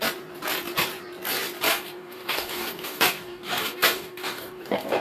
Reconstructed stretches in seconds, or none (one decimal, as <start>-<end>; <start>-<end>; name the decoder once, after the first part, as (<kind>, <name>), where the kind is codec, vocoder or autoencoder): 1.7-5.0 (codec, DAC)